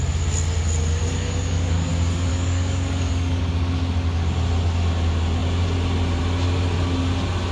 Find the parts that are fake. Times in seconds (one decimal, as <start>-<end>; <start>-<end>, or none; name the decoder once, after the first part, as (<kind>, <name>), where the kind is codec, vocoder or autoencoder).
1.0-1.9 (codec, DAC); 2.3-3.4